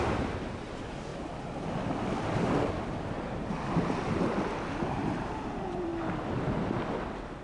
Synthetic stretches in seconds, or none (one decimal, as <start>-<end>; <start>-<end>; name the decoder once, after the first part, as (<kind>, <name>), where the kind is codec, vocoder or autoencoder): 0.0-1.1 (vocoder, BigVGAN v2); 4.9-5.9